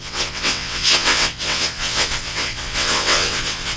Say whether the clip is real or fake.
fake